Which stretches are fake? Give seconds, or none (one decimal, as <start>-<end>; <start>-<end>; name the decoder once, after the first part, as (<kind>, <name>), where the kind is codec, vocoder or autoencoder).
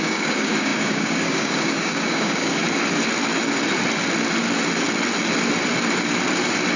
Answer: 0.0-2.6 (codec, DAC)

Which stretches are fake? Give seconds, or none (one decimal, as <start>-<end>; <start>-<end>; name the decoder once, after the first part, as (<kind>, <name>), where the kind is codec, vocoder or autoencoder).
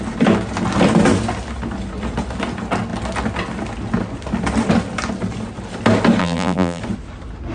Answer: 6.2-6.8 (vocoder, BigVGAN v2)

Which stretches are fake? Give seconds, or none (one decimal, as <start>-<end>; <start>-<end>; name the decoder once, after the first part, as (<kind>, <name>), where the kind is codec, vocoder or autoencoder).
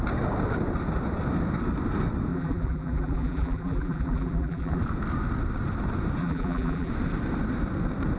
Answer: 2.3-4.8 (vocoder, BigVGAN v2); 6.2-6.9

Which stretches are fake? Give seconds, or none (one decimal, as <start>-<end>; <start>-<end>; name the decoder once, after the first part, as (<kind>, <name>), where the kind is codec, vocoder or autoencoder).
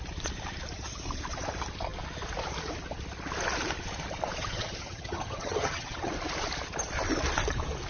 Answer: 4.4-6.1 (vocoder, HiFi-GAN)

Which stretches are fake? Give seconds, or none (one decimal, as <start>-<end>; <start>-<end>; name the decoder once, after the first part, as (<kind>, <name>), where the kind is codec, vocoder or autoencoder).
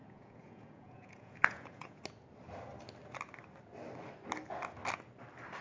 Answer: 0.0-2.0 (vocoder, Vocos)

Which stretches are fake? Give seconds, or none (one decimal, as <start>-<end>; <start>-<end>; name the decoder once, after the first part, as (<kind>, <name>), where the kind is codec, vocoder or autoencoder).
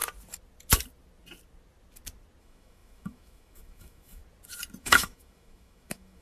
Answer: 2.4-4.2 (autoencoder, DAC-VAE); 4.8-6.2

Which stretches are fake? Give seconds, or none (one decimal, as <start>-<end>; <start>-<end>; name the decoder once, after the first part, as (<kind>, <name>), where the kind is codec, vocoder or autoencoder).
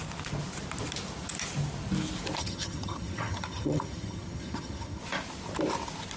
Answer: 2.4-5.0 (vocoder, HiFi-GAN)